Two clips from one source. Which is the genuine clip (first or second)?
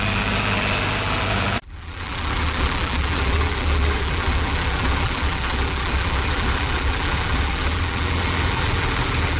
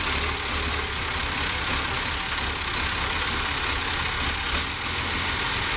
second